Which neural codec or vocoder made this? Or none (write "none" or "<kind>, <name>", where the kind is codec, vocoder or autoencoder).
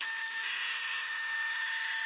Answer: autoencoder, DAC-VAE